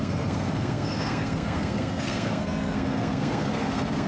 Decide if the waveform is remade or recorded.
remade